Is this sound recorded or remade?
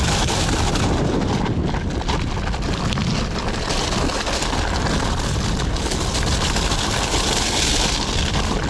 recorded